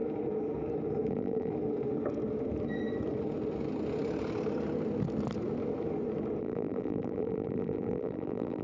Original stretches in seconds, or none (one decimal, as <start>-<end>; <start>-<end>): 0.0-1.1; 1.5-6.4